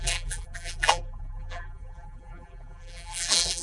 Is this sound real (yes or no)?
no